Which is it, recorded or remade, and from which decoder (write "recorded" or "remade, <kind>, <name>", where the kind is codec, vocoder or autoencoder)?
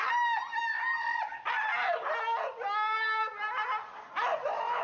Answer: recorded